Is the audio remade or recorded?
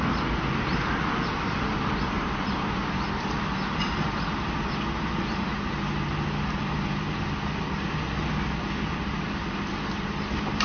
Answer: recorded